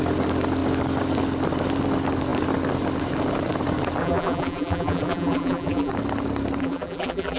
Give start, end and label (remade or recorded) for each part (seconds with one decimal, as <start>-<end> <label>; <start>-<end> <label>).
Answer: 0.0-4.0 recorded; 4.0-5.9 remade; 5.9-6.6 recorded; 6.6-7.4 remade